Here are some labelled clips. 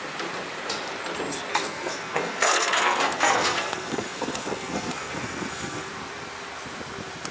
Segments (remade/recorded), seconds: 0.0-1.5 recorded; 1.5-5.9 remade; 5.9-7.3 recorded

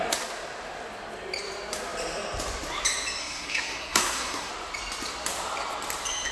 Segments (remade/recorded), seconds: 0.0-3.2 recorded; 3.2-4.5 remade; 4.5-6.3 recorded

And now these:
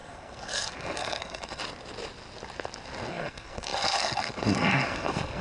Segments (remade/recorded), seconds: 0.0-1.6 remade; 1.6-3.1 recorded; 3.1-5.4 remade

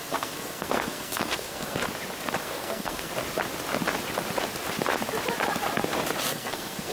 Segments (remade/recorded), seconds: 0.0-1.8 remade; 1.8-2.4 recorded; 2.4-3.1 remade; 3.1-6.2 recorded; 6.2-6.9 remade

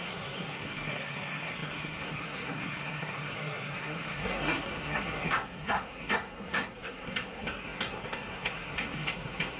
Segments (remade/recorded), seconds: 0.0-9.6 remade

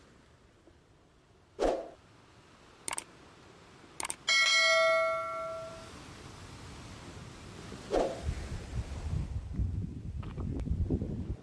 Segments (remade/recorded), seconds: 0.0-11.4 recorded

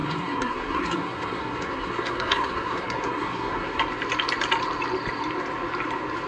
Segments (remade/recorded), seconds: 0.0-3.8 remade; 3.8-6.3 recorded